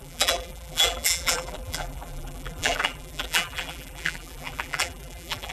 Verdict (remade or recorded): remade